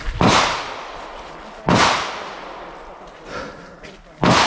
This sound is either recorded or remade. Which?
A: recorded